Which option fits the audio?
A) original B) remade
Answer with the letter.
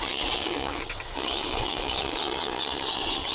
B